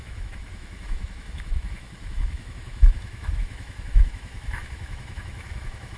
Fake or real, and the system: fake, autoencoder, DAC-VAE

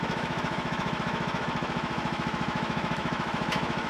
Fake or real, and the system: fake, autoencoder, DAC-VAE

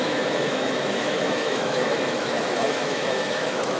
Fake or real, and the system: fake, autoencoder, DAC-VAE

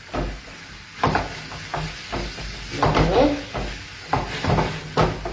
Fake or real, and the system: real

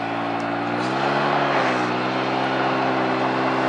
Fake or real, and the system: real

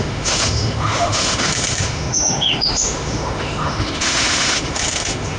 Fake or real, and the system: fake, autoencoder, DAC-VAE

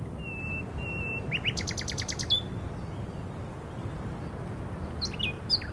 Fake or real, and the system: real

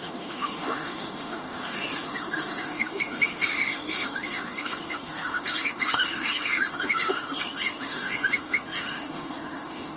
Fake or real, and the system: fake, autoencoder, DAC-VAE